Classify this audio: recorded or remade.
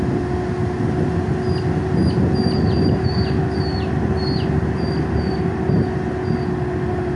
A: recorded